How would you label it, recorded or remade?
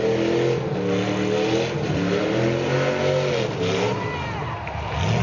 recorded